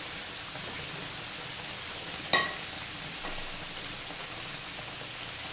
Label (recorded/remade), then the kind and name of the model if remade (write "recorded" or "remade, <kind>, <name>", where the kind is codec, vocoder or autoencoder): recorded